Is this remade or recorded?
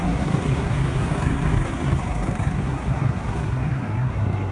remade